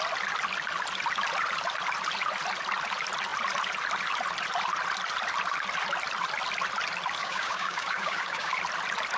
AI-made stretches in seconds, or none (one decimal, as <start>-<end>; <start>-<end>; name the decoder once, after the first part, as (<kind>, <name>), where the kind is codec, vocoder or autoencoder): 7.2-8.5 (codec, DAC)